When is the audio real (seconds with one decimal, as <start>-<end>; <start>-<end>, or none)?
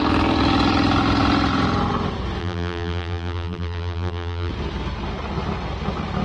0.0-2.4; 4.5-6.2